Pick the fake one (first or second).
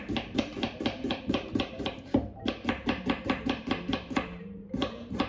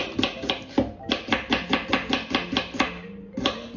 first